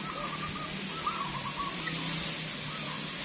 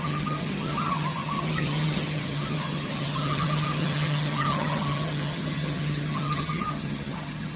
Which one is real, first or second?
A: first